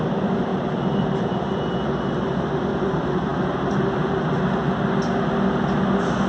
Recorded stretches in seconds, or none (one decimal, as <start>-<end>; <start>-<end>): 0.0-0.5; 1.6-6.3